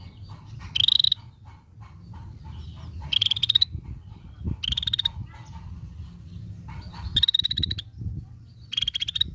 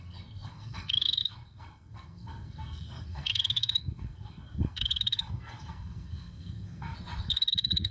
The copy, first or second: second